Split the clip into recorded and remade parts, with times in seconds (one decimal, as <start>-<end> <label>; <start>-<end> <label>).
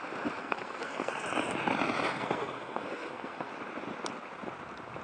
0.0-0.4 recorded; 0.4-1.2 remade; 1.2-2.1 recorded; 2.1-3.5 remade; 3.5-5.0 recorded